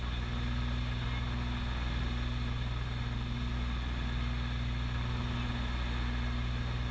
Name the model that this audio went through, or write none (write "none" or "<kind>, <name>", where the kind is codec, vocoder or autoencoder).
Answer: none